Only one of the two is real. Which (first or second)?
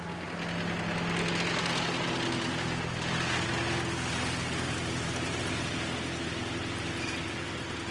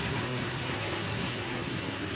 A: first